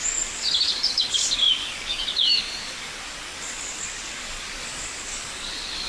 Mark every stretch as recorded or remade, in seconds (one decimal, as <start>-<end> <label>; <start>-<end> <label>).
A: 0.0-5.9 remade